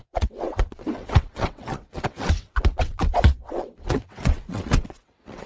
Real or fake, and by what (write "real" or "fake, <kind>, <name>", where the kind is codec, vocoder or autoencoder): fake, vocoder, WaveNeXt